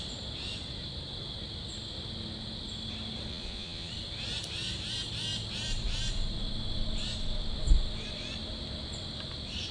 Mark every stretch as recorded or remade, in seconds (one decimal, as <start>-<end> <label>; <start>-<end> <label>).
0.0-3.3 recorded; 3.3-3.9 remade; 3.9-9.7 recorded